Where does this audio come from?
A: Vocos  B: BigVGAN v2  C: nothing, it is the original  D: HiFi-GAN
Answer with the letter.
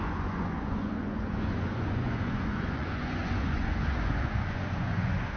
A